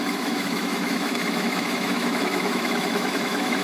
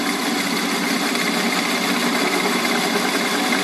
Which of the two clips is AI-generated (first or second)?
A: first